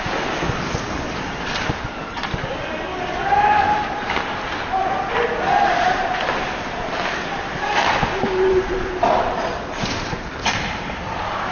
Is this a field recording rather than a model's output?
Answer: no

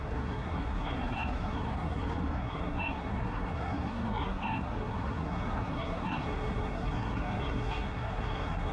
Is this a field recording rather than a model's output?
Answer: no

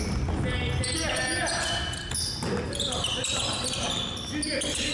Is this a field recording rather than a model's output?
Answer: yes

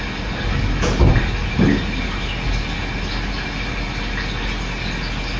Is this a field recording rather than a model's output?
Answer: yes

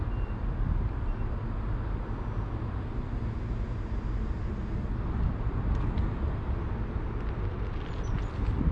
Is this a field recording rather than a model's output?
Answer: yes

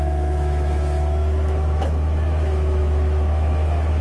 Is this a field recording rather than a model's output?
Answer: no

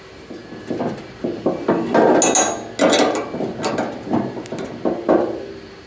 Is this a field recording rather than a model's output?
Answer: yes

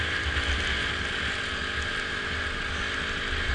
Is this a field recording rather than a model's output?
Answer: yes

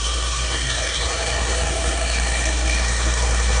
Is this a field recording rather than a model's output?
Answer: no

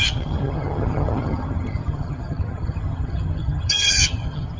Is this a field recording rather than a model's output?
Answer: no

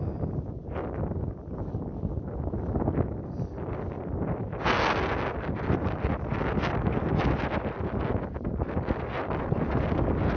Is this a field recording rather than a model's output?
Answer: yes